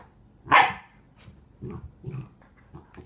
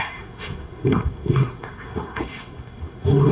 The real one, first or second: first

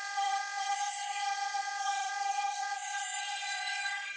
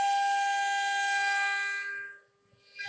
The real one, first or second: second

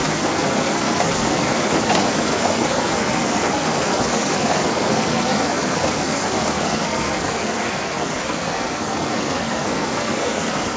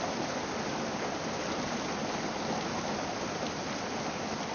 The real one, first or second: second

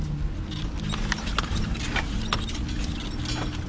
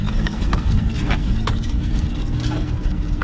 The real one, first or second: first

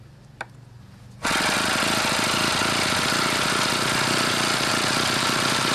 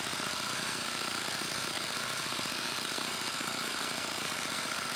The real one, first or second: first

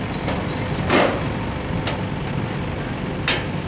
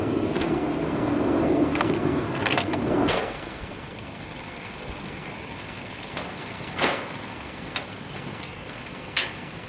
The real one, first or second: first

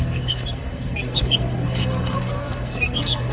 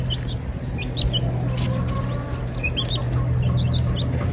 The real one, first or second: second